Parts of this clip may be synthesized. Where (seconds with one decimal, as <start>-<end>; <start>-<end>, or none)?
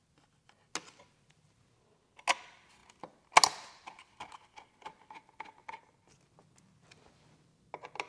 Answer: none